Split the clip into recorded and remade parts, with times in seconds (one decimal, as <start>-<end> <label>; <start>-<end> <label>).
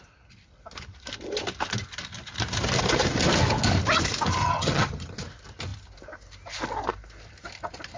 0.0-4.4 recorded; 4.4-5.1 remade; 5.1-8.0 recorded